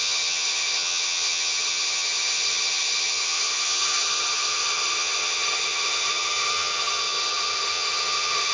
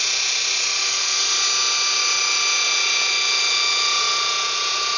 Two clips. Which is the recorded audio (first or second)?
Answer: second